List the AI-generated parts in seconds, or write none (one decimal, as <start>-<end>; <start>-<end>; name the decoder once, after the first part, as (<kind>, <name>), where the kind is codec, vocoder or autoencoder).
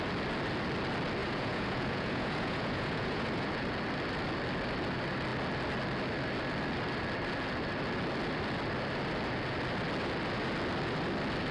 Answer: 1.2-3.3 (vocoder, Vocos)